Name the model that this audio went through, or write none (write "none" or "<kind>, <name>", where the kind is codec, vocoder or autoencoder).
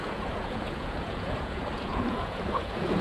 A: vocoder, Vocos